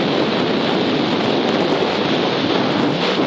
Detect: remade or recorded recorded